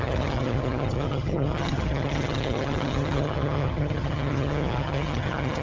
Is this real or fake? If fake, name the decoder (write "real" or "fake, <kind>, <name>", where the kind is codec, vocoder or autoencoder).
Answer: fake, vocoder, HiFi-GAN